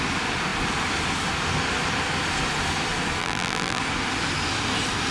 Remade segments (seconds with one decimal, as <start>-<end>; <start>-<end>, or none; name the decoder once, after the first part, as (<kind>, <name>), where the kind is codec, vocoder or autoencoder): 3.2-3.8 (vocoder, BigVGAN v2)